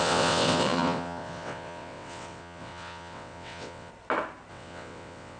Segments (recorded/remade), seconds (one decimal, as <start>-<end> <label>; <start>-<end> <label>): 0.0-3.9 remade; 3.9-4.5 recorded; 4.5-5.4 remade